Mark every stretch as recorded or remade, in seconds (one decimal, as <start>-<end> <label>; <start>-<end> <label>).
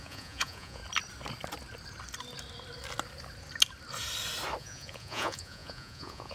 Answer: 0.0-0.8 remade; 0.8-4.6 recorded; 4.6-6.3 remade